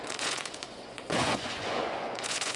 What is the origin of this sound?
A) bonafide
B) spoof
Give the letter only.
B